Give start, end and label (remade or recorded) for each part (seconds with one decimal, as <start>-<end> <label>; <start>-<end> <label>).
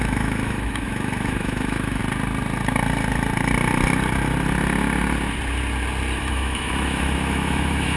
0.0-2.0 remade; 2.0-6.2 recorded; 6.2-8.0 remade